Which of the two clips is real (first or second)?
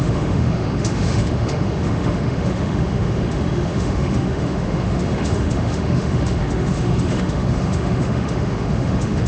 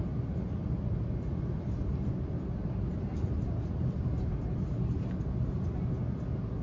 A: second